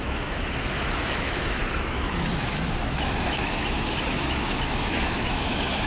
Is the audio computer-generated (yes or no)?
yes